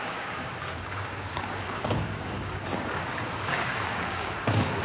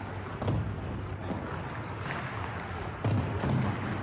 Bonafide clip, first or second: second